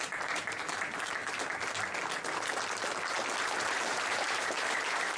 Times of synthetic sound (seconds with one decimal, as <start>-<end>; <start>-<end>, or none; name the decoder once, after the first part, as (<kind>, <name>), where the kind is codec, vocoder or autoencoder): 0.0-1.2 (vocoder, BigVGAN v2); 3.4-5.2